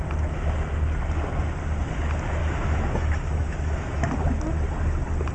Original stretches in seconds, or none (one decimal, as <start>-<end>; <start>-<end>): 0.0-2.4; 4.1-5.3